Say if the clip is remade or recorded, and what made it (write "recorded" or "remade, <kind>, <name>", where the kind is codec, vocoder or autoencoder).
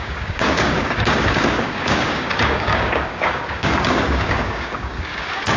remade, codec, DAC